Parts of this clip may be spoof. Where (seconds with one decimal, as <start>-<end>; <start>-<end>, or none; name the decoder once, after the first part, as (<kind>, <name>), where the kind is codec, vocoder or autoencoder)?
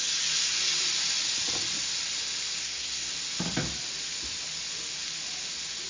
2.6-3.1 (codec, SNAC)